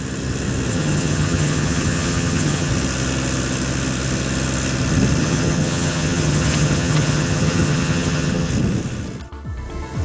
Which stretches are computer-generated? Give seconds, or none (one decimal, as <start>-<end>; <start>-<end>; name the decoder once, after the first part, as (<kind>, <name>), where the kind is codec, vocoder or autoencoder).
0.7-2.7 (vocoder, HiFi-GAN); 5.2-8.5